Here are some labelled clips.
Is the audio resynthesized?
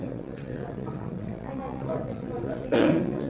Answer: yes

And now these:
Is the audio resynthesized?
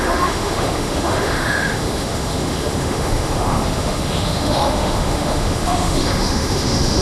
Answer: yes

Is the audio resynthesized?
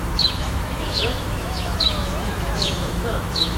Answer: yes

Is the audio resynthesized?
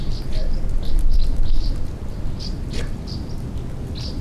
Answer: no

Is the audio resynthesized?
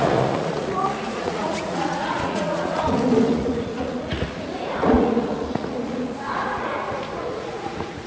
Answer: yes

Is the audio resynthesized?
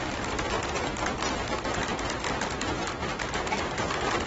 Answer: no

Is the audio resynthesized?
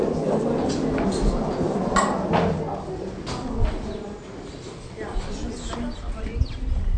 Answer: no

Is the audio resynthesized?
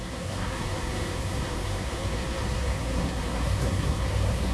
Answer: yes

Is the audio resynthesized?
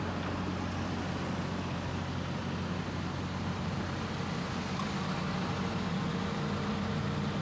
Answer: no